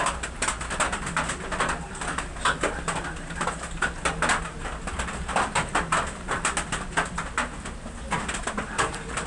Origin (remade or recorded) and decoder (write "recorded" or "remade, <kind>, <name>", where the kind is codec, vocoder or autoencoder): recorded